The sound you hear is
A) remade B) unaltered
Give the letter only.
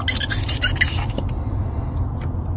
B